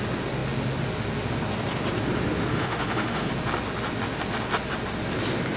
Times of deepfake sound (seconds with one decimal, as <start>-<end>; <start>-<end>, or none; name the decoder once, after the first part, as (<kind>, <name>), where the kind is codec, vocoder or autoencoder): 2.5-3.3 (autoencoder, DAC-VAE)